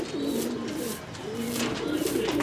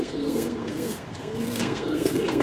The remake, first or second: second